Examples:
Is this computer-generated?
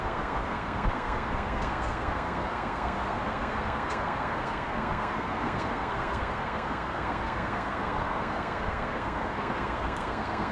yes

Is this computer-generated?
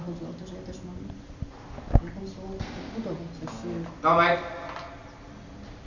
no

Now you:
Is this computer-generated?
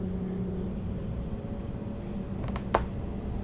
no